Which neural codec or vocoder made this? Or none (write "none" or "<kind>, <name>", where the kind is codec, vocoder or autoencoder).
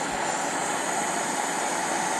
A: none